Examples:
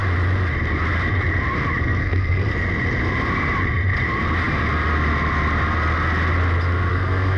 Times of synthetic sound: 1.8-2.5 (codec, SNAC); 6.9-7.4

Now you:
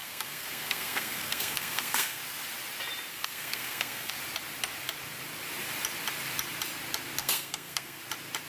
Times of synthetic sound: 0.0-2.2 (codec, SNAC); 3.1-4.1; 7.2-8.0

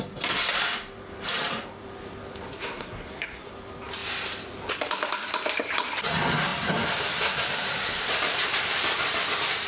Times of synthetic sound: 2.5-3.5 (codec, SNAC)

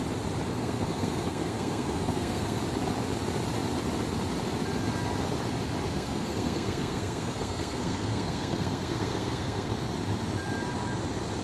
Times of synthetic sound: 0.5-2.6 (codec, SNAC); 5.9-9.7

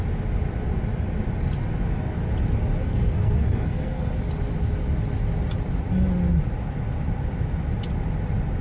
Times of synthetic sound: 2.8-4.1 (codec, SNAC)

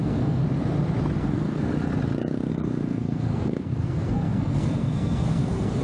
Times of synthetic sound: 0.0-0.4 (codec, SNAC); 1.2-1.7; 2.5-5.8